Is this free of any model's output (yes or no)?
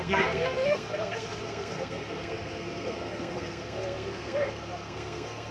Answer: no